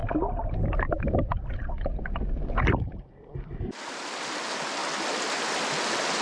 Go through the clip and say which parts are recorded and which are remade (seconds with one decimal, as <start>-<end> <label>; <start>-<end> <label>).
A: 0.0-6.2 recorded